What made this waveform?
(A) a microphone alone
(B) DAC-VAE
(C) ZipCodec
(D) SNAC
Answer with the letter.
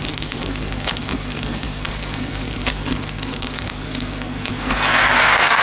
D